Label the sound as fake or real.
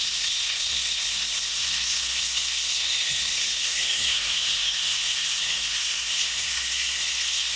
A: fake